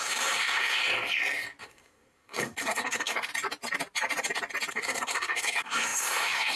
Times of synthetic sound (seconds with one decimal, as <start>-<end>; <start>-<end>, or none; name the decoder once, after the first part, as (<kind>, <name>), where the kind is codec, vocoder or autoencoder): 0.0-0.8 (codec, SNAC); 1.6-3.3; 4.7-6.6